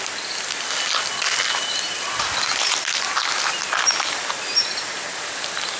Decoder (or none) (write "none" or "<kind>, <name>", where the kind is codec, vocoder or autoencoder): none